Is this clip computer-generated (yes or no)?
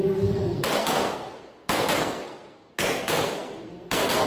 yes